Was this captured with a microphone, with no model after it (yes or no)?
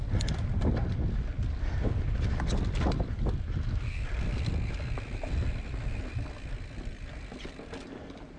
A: yes